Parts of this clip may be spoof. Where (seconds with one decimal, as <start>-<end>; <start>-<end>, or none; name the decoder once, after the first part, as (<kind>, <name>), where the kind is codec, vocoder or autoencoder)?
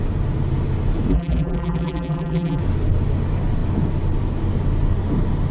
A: 1.1-2.6 (vocoder, BigVGAN v2)